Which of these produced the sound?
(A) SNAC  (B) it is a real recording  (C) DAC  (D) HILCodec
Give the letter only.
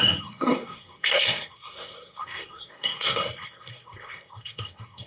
A